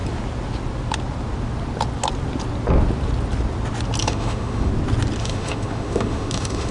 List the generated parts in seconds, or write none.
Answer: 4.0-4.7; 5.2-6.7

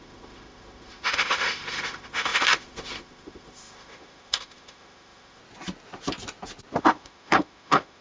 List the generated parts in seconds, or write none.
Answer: 0.0-5.4; 6.8-8.0

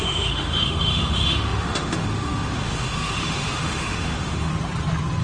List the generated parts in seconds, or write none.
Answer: 0.0-4.5